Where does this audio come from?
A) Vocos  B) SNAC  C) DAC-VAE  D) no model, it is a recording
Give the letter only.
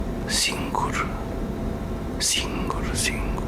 D